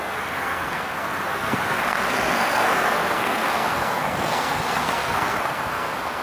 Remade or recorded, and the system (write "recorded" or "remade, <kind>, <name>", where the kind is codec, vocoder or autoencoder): remade, codec, SNAC